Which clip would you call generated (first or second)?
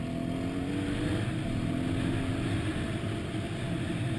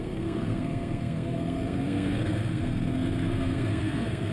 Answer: second